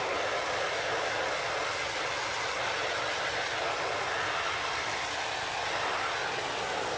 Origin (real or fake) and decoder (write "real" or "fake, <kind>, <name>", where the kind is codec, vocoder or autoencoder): real